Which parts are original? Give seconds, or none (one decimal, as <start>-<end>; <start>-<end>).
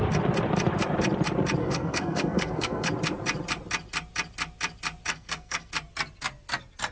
0.0-1.6; 2.9-5.1; 5.7-6.9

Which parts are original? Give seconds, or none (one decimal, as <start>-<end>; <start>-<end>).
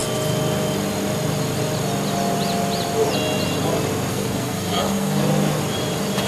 0.0-4.1; 5.2-6.3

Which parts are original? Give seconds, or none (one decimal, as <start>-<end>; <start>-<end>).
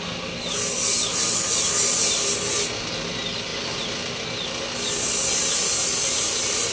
0.0-6.7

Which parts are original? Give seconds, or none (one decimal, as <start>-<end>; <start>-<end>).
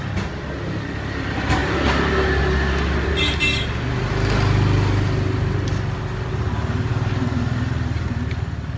0.0-8.8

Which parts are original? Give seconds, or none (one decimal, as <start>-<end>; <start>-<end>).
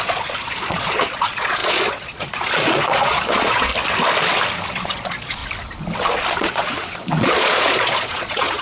3.7-4.7; 5.4-6.4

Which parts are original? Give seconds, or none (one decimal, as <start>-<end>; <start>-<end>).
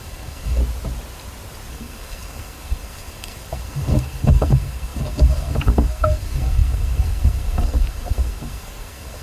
0.6-1.7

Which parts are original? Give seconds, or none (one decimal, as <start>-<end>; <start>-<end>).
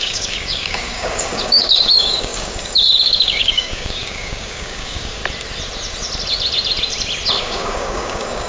5.2-7.4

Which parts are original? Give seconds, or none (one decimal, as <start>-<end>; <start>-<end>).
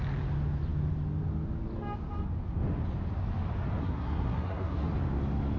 0.0-3.8; 4.9-5.6